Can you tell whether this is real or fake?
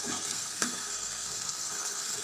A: fake